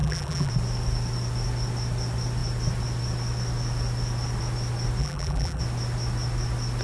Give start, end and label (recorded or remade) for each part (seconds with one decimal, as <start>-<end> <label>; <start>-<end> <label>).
0.0-0.5 remade; 0.5-5.0 recorded; 5.0-5.6 remade; 5.6-6.8 recorded